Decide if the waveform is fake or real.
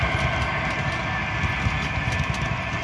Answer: real